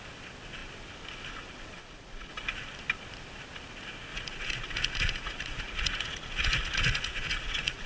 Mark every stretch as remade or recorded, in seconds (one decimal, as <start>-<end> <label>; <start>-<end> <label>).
0.0-1.8 recorded; 1.8-2.3 remade; 2.3-4.1 recorded; 4.1-7.9 remade